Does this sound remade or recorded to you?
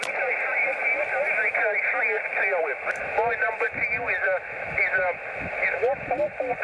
recorded